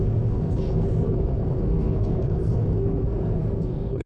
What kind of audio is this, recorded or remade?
remade